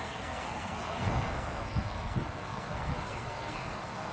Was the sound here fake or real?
fake